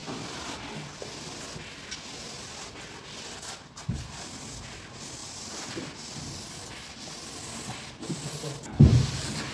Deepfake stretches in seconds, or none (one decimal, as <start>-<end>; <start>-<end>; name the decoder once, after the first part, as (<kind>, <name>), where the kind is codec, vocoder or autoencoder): 5.2-8.3 (vocoder, BigVGAN v2)